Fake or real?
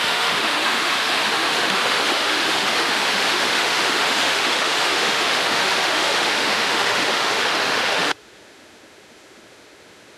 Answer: fake